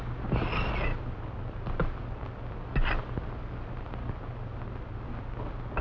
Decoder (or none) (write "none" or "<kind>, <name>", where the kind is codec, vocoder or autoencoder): none